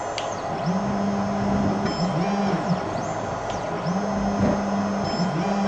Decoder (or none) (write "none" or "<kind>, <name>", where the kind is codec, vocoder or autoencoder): none